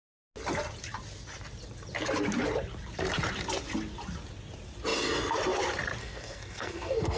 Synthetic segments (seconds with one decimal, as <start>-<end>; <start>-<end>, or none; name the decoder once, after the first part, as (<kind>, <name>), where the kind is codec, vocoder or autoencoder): 6.0-7.2 (codec, SNAC)